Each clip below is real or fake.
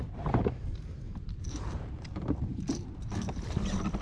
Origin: fake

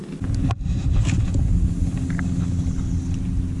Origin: real